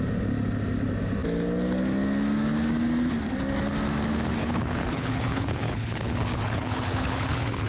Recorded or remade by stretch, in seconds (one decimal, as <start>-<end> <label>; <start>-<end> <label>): 0.0-4.4 recorded; 4.4-7.7 remade